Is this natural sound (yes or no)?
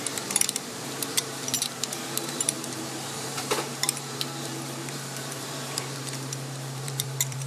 no